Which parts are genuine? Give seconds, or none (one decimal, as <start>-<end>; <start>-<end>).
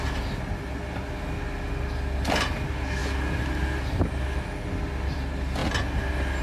0.0-6.4